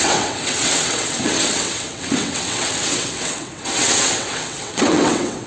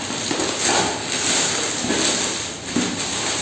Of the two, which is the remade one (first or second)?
first